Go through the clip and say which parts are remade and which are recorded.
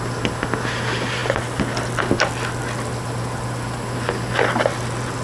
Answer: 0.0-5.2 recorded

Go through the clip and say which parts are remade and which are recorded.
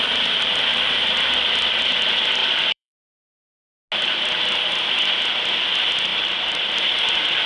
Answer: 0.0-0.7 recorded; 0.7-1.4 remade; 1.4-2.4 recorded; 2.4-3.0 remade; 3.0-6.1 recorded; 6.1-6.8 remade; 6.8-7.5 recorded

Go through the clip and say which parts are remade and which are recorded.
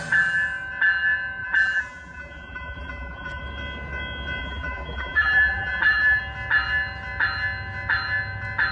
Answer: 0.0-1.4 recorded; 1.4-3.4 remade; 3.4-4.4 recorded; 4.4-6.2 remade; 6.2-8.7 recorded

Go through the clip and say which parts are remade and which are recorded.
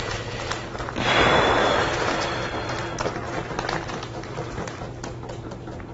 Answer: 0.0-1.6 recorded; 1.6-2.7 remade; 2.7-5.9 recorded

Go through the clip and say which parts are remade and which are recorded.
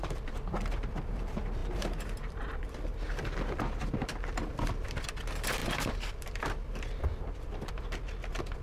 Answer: 0.0-8.6 remade